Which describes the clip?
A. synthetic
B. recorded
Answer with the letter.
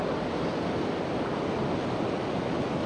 B